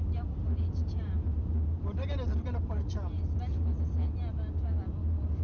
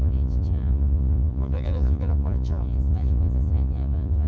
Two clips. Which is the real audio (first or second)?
first